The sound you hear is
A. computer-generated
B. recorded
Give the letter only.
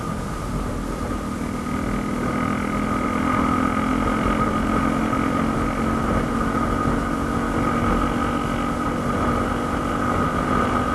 B